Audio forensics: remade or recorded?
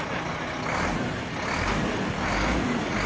recorded